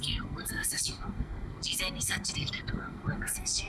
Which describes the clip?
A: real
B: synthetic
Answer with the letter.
B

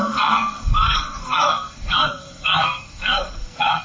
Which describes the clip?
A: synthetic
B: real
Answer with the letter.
A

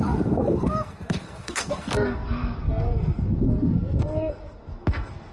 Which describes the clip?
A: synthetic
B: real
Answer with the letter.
A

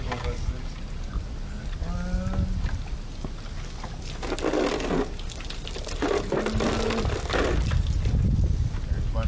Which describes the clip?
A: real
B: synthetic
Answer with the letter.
A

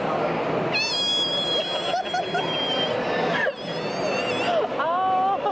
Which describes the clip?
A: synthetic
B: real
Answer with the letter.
B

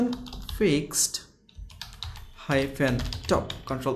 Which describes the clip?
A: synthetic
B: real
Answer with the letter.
B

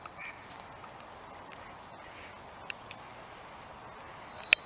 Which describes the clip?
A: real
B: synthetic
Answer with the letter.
A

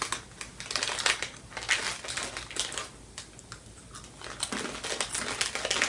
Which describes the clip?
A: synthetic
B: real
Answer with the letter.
B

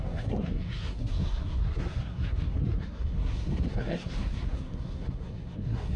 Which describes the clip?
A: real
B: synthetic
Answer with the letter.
B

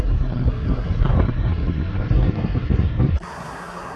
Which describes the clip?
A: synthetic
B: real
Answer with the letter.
A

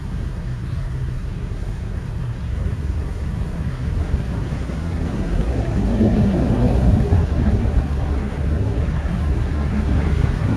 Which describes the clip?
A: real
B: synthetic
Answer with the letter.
B